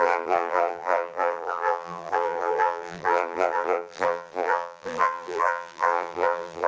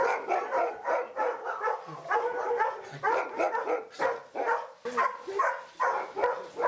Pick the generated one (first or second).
first